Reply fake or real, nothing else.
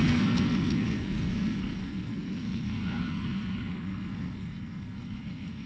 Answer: fake